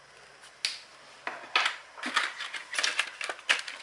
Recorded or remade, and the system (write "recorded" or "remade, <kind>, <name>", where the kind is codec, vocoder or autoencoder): recorded